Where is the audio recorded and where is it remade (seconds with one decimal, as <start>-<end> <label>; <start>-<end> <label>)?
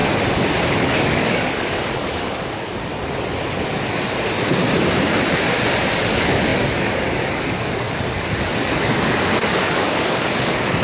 0.0-0.8 recorded; 0.8-2.9 remade; 2.9-6.0 recorded; 6.0-10.8 remade